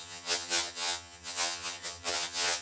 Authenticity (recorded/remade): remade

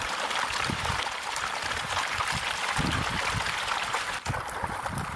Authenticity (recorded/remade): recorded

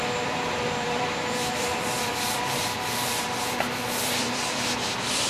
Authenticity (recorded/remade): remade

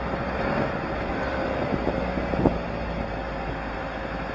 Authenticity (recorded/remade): recorded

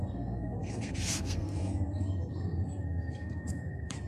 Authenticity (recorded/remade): remade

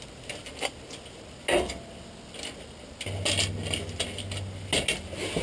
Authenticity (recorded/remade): recorded